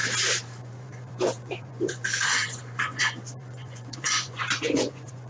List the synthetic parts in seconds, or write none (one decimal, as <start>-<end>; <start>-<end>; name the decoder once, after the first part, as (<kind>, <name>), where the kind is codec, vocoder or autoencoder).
0.6-5.3 (vocoder, Vocos)